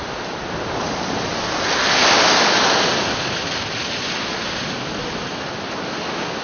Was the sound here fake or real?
real